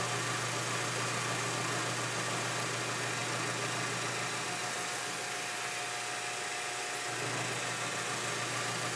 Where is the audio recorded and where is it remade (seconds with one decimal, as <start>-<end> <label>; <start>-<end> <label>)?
0.0-9.0 recorded